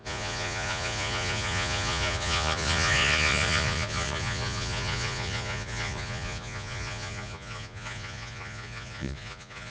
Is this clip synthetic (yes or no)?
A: yes